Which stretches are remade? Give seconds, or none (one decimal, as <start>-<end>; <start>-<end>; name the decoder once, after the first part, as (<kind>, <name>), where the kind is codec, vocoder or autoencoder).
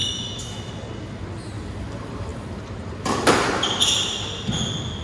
0.0-0.7 (autoencoder, DAC-VAE)